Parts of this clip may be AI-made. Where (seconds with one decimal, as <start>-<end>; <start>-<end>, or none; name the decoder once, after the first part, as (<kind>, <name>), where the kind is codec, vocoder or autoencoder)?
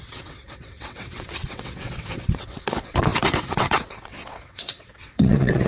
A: 0.0-5.7 (vocoder, WaveNeXt)